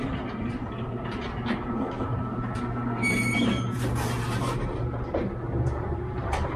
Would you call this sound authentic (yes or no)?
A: no